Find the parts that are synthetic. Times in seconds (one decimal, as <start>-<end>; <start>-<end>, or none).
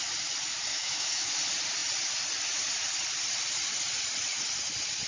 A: 0.7-1.3